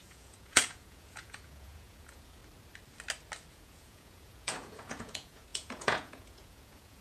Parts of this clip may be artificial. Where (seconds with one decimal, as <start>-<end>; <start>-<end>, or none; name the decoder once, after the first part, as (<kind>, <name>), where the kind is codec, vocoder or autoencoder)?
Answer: 0.0-2.4 (vocoder, Vocos); 3.5-7.0